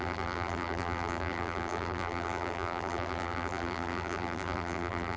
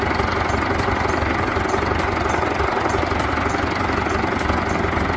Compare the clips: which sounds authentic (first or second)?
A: second